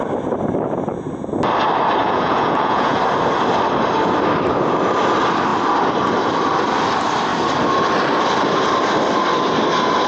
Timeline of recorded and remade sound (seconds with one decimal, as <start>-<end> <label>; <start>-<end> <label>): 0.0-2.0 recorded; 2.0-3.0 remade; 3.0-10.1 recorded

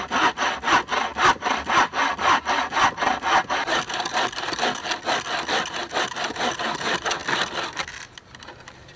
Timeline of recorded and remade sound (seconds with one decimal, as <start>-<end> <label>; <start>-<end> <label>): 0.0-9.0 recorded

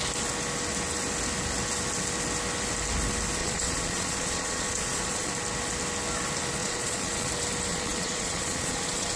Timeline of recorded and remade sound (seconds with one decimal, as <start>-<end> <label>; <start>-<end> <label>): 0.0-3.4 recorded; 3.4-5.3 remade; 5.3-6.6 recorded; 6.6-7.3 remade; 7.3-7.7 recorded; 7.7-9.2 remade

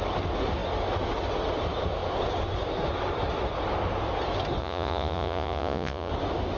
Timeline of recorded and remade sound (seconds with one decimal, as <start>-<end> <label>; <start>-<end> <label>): 0.0-4.6 recorded; 4.6-6.1 remade; 6.1-6.6 recorded

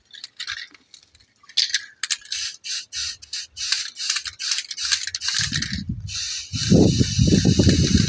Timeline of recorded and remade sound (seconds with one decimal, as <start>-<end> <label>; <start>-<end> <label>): 0.0-8.1 recorded

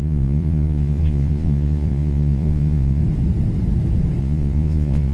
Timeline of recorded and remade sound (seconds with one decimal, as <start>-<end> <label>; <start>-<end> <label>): 0.0-3.0 remade; 3.0-4.2 recorded; 4.2-5.1 remade

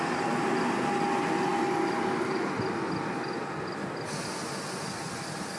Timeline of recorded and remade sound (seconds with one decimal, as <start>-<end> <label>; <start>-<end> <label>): 0.0-5.6 recorded

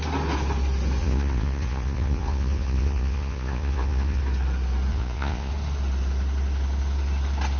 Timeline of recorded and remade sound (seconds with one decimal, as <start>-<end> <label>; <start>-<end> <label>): 0.0-1.0 recorded; 1.0-4.2 remade; 4.2-4.9 recorded; 4.9-5.5 remade; 5.5-7.6 recorded